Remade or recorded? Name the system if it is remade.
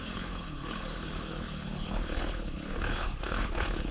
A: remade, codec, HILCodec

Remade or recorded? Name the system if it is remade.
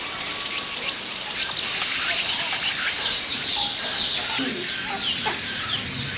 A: recorded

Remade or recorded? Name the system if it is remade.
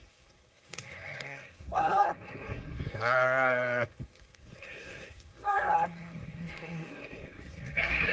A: remade, codec, SNAC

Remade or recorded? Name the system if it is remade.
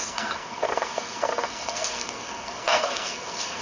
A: remade, codec, SNAC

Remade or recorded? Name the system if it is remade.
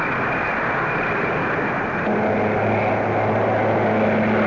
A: recorded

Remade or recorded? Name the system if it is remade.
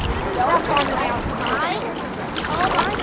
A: recorded